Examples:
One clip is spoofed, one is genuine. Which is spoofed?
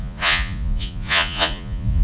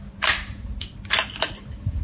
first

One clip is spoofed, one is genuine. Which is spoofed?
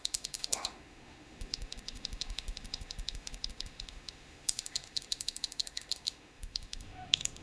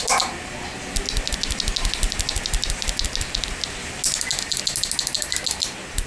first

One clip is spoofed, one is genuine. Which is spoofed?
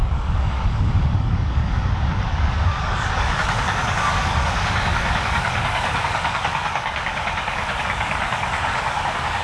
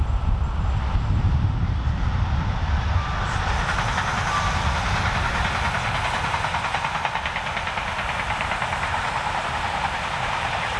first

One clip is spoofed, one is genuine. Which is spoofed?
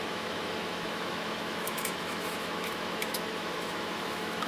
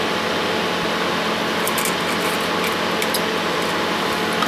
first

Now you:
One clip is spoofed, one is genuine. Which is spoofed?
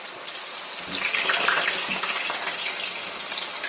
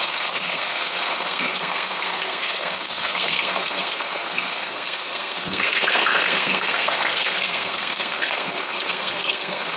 second